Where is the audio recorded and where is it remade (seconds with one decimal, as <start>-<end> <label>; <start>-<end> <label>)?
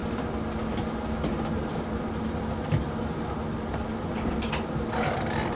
0.0-5.6 recorded